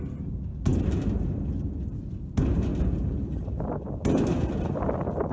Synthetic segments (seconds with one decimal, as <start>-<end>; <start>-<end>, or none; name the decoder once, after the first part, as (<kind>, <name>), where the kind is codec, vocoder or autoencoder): none